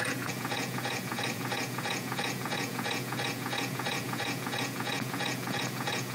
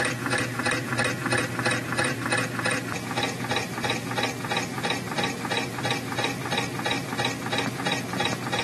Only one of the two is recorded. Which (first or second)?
second